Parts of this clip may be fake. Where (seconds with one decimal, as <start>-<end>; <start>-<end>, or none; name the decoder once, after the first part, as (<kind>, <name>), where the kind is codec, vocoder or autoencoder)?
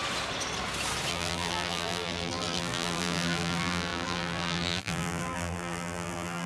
1.1-6.5 (vocoder, BigVGAN v2)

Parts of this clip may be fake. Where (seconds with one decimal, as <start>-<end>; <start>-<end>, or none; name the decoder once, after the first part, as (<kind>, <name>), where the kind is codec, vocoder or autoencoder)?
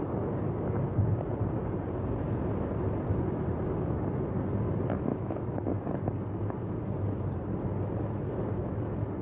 5.1-5.7 (autoencoder, DAC-VAE)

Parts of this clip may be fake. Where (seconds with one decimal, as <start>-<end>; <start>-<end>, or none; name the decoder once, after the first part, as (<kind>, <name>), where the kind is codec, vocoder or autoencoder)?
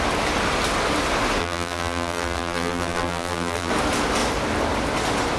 1.4-3.7 (vocoder, BigVGAN v2)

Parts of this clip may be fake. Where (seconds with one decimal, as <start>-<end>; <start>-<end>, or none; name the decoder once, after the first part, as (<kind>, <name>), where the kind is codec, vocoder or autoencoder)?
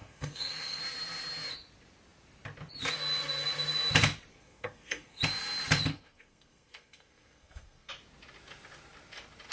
0.0-0.8 (codec, SNAC); 4.3-5.2; 5.9-7.9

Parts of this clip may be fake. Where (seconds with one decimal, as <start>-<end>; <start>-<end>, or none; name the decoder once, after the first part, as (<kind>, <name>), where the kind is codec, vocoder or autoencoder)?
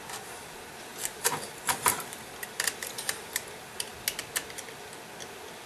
0.0-3.9 (vocoder, BigVGAN v2)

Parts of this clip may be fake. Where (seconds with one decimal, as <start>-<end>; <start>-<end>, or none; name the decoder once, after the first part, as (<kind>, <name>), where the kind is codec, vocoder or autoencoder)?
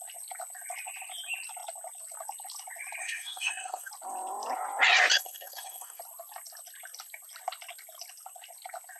3.0-3.9 (codec, SNAC); 5.1-6.0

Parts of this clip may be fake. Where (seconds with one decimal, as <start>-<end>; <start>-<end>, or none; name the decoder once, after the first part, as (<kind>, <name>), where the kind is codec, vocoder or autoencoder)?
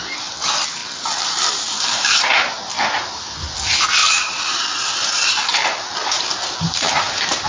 0.8-2.2 (vocoder, BigVGAN v2); 4.0-7.0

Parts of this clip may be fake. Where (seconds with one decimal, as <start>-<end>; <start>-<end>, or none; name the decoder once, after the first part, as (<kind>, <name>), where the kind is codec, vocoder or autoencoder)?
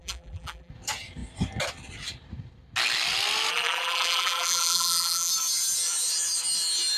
0.0-0.7 (vocoder, BigVGAN v2); 3.5-5.3